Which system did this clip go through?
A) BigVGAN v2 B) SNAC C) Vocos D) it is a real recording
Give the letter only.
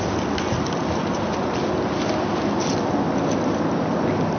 D